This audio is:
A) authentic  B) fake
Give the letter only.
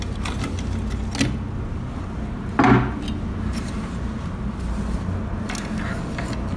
A